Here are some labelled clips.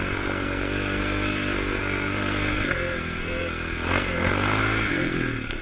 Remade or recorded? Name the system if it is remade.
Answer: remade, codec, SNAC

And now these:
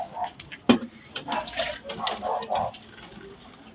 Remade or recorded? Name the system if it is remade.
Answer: recorded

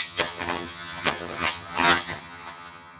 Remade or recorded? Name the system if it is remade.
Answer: remade, vocoder, HiFi-GAN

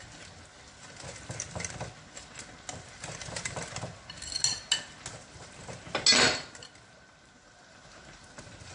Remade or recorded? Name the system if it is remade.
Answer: recorded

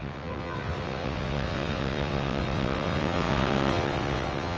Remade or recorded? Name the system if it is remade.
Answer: remade, vocoder, WaveNeXt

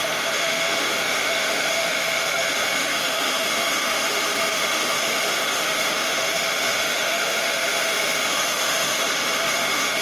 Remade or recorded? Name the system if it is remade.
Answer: remade, autoencoder, DAC-VAE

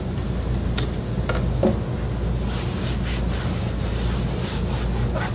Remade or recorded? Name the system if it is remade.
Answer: recorded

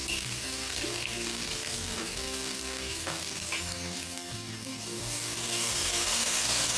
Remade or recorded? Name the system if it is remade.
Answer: remade, codec, DAC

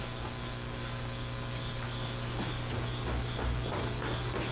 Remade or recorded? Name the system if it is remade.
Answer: recorded